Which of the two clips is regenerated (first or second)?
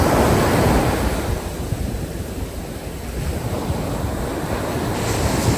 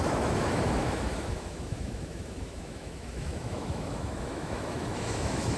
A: second